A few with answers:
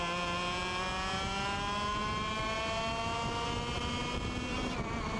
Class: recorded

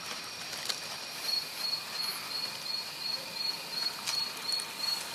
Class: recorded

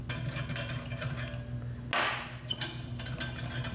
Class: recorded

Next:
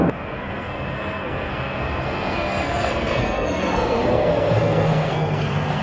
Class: remade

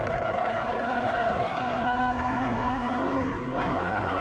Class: remade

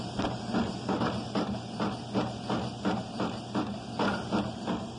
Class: recorded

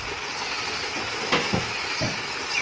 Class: recorded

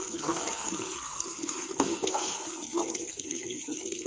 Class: remade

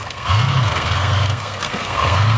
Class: remade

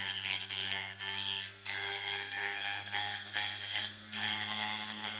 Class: remade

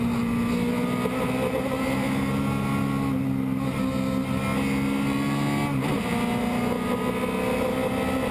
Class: recorded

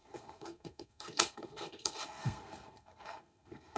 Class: remade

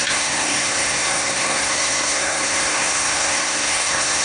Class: remade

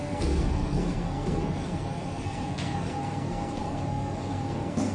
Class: remade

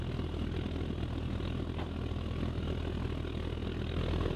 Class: recorded